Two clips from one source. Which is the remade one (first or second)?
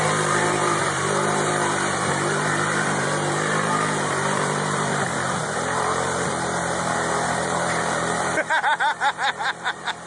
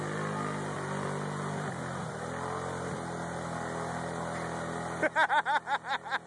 first